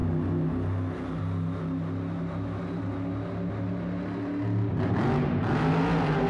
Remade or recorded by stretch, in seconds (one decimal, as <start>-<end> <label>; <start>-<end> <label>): 0.0-6.3 recorded